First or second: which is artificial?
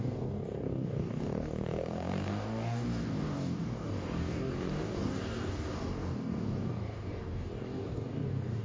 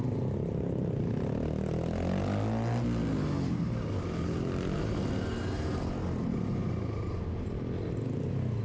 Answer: first